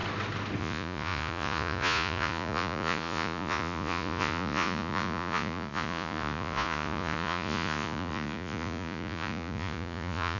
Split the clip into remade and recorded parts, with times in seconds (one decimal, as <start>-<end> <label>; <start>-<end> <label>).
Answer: 0.0-0.6 recorded; 0.6-10.4 remade